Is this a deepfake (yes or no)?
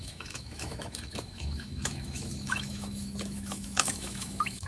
yes